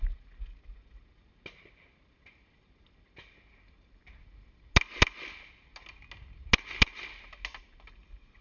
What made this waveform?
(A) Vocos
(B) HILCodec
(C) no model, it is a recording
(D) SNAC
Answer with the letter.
C